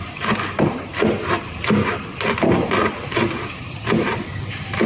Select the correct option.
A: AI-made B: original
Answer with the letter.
A